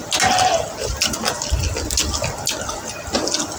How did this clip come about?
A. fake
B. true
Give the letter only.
B